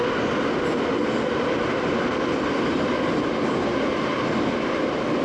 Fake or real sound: real